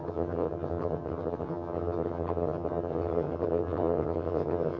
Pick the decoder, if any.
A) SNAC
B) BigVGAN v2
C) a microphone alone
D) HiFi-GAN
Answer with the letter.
D